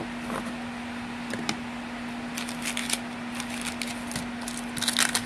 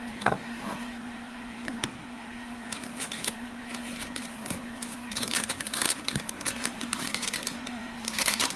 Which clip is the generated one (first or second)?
second